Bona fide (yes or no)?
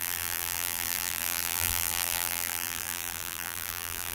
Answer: no